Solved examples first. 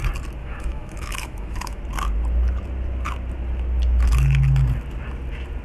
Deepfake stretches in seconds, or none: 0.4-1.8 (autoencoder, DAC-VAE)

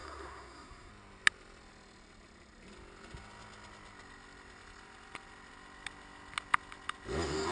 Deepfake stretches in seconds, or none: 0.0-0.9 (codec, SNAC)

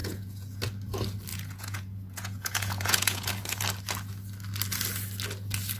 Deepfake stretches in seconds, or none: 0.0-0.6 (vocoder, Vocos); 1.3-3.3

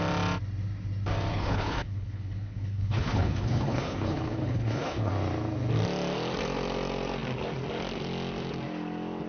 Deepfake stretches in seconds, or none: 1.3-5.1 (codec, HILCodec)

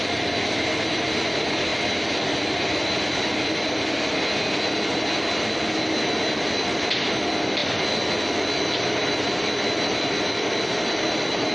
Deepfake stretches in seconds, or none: none

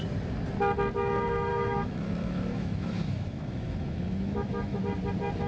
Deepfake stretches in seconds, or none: 1.5-4.8 (autoencoder, DAC-VAE)